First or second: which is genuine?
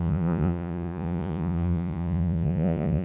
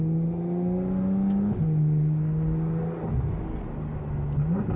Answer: second